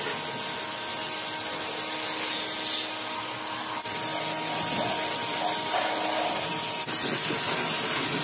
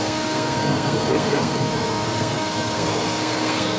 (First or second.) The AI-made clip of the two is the second